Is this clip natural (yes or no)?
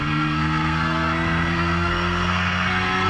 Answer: no